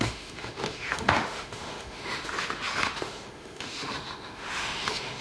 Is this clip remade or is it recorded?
remade